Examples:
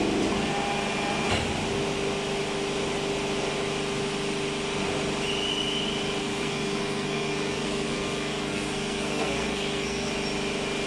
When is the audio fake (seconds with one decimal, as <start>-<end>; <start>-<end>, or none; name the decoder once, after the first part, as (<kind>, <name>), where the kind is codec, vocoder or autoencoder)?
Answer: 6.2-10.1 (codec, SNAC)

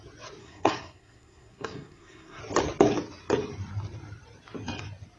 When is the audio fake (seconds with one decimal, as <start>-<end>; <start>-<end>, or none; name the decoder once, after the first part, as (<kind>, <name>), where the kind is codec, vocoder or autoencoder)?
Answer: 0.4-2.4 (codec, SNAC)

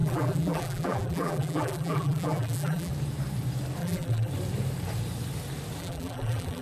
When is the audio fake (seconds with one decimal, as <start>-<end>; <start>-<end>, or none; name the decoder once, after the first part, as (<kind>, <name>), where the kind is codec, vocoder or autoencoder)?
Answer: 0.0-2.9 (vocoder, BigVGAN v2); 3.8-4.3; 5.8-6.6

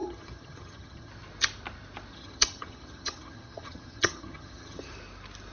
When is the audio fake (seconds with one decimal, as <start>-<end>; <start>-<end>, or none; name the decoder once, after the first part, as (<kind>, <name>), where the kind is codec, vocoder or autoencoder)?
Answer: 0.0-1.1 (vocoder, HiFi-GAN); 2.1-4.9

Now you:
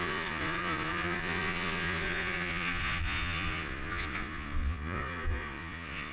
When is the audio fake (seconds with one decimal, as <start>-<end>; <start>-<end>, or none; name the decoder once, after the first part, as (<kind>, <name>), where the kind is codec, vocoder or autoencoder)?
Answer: 0.0-6.1 (vocoder, Vocos)

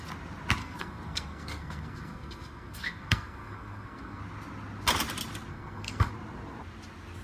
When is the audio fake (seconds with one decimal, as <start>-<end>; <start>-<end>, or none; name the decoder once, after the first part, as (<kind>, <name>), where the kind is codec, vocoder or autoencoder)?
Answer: 0.6-4.2 (codec, SNAC); 5.5-6.1